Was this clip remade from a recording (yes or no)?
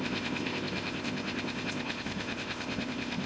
yes